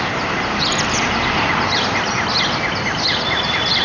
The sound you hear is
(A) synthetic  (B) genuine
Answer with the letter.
B